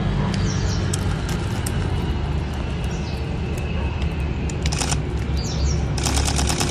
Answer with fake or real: real